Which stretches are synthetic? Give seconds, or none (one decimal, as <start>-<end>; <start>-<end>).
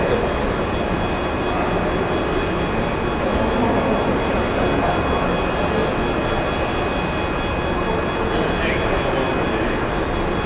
none